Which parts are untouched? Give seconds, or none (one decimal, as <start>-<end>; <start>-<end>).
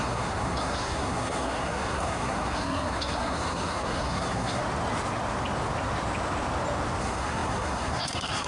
4.6-7.0